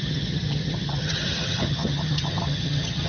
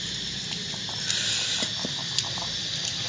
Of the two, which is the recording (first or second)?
second